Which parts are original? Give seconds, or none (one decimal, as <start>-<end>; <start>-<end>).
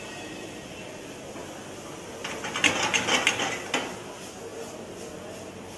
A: 0.0-5.8